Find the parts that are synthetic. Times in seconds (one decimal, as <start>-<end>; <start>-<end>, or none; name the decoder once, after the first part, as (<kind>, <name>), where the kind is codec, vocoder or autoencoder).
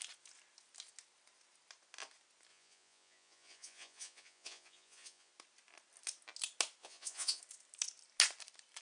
2.5-5.3 (vocoder, Vocos); 6.8-7.4